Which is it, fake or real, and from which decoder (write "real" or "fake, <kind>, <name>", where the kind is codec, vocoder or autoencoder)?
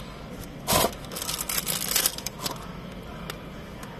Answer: real